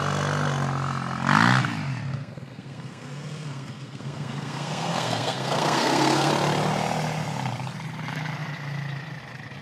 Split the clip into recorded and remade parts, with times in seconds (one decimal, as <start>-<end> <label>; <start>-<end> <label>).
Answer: 0.0-2.1 recorded; 2.1-6.3 remade; 6.3-9.6 recorded